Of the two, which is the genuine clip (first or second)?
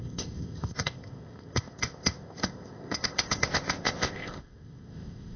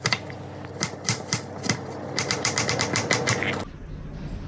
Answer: second